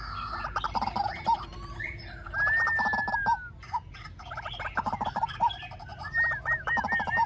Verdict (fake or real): real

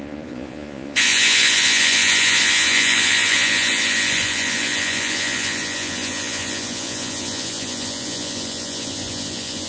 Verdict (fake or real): fake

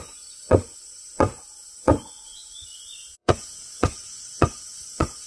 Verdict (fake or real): fake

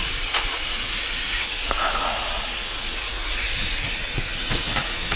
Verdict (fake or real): fake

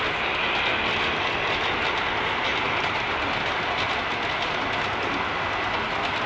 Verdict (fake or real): real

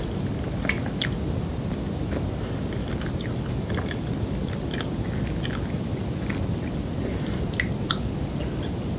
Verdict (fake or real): real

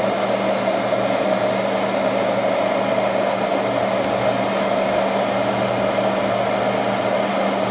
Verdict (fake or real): real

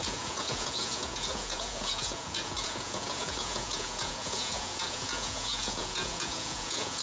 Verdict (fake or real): fake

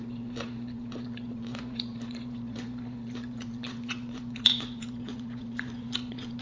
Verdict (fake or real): fake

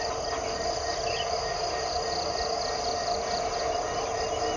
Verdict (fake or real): real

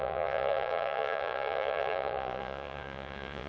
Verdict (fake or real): fake